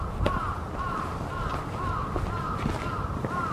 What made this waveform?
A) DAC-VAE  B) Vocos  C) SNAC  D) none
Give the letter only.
D